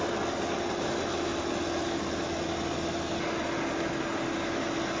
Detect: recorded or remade recorded